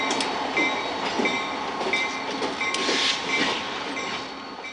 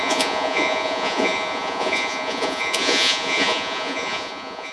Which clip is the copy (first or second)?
second